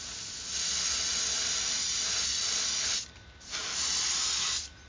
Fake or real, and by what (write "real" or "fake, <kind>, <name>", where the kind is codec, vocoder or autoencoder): real